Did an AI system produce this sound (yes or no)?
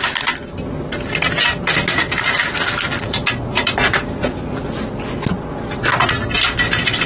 no